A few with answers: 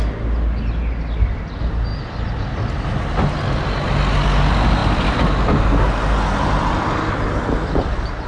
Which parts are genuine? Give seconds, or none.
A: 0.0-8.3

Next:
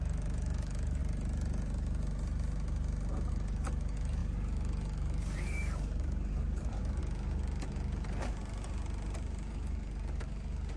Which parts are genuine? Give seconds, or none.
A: 1.0-3.3; 8.4-9.5

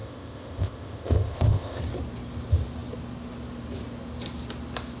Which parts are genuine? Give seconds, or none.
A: 1.8-5.0